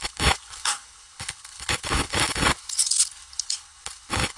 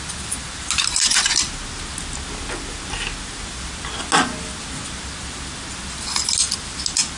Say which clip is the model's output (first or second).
first